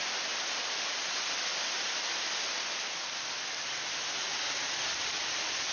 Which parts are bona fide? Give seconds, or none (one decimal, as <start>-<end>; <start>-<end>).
0.0-5.7